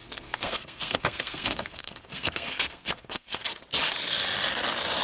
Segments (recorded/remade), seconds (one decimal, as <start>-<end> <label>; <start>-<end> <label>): 0.0-3.4 remade; 3.4-5.0 recorded